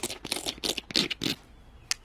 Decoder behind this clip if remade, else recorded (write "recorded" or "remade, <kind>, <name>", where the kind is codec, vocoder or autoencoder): recorded